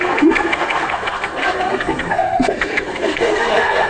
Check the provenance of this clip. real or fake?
fake